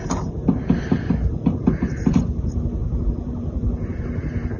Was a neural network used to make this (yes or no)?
no